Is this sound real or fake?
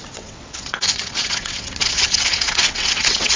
fake